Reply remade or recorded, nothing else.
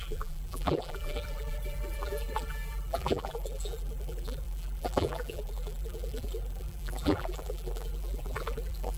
remade